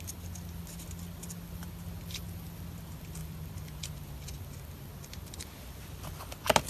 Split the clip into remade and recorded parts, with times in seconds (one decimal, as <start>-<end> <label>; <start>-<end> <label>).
0.0-3.2 recorded; 3.2-3.9 remade; 3.9-6.7 recorded